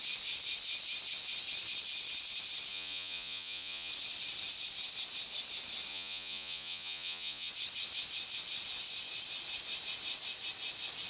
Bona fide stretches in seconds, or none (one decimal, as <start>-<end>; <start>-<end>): 0.0-2.7; 3.9-5.9; 7.5-11.1